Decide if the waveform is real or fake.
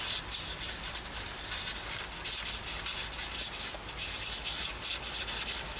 real